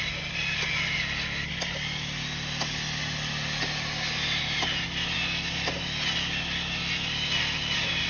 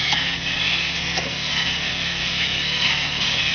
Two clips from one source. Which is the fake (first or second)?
second